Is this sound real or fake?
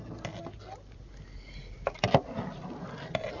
real